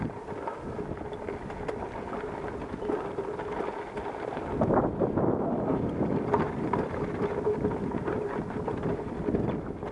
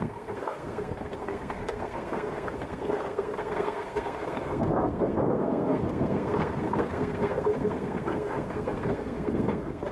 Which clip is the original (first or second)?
first